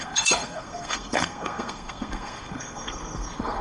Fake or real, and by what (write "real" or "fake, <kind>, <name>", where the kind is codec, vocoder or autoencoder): fake, codec, SNAC